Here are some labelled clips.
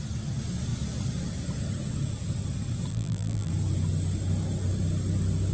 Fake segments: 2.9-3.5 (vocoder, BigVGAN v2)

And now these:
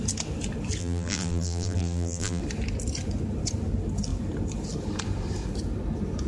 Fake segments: 0.8-2.4 (vocoder, BigVGAN v2)